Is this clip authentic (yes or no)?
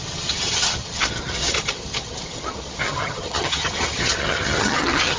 no